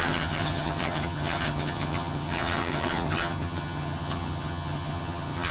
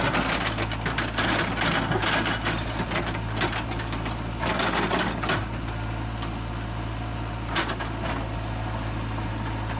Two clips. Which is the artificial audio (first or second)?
first